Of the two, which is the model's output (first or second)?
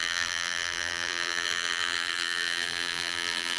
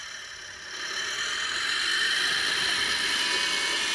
first